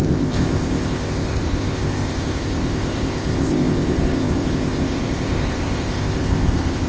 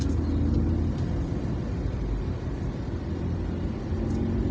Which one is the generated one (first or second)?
first